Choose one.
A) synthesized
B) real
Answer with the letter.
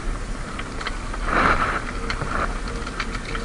B